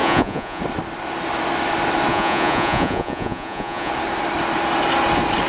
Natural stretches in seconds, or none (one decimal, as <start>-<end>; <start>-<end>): 0.6-2.1; 3.9-5.5